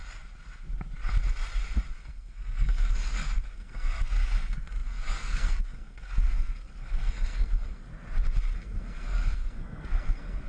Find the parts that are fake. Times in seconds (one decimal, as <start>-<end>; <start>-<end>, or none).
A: 2.0-7.9; 8.5-10.5